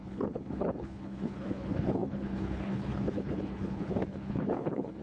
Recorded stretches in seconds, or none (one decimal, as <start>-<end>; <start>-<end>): none